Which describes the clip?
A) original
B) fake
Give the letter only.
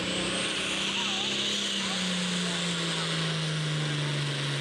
A